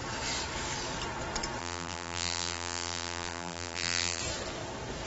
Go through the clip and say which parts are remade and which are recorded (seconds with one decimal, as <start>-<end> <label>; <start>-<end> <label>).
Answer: 0.0-1.6 recorded; 1.6-4.2 remade; 4.2-5.1 recorded